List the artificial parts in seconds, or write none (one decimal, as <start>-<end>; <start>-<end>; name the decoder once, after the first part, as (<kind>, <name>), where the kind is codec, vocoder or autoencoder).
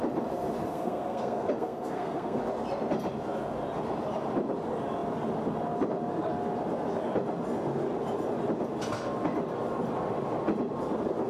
0.7-2.4 (codec, SNAC)